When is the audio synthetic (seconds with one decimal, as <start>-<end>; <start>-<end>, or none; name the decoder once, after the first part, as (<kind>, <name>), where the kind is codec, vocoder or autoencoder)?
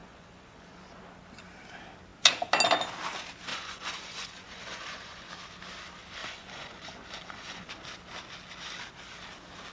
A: 0.0-1.0 (vocoder, Vocos); 3.5-5.3; 6.2-7.7